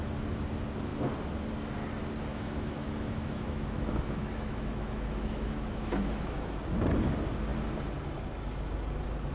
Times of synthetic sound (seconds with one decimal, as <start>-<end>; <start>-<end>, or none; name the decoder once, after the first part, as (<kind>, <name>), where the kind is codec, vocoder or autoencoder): 2.3-6.6 (autoencoder, DAC-VAE)